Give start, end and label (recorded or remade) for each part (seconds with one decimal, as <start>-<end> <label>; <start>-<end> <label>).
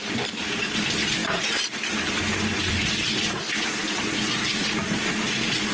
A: 0.0-1.2 recorded; 1.2-3.3 remade; 3.3-3.8 recorded; 3.8-4.8 remade; 4.8-5.7 recorded